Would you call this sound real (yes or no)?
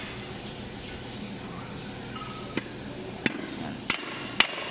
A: yes